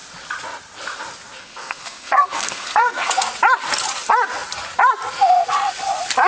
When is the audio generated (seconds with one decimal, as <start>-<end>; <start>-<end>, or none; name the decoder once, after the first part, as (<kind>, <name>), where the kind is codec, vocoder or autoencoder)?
1.4-3.1 (codec, SNAC)